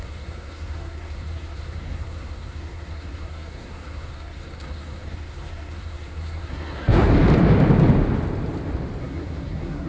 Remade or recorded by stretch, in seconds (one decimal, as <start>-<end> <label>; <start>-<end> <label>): 0.0-7.1 remade; 7.1-9.0 recorded; 9.0-9.9 remade